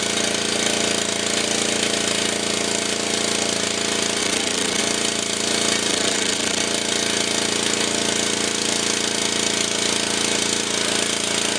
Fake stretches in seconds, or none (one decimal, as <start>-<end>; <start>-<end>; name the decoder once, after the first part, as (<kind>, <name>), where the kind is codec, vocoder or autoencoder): 4.2-4.8 (vocoder, Vocos); 5.9-6.6